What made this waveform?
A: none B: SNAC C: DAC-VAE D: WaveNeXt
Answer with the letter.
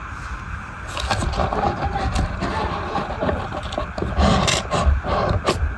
A